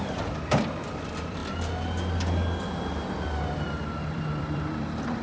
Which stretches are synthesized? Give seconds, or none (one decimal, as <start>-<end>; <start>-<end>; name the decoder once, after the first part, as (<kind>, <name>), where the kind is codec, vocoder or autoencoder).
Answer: 0.0-1.4 (vocoder, BigVGAN v2); 3.2-5.2